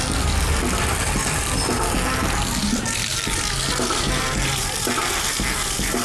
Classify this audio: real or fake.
real